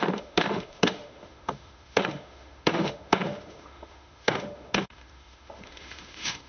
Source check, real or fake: fake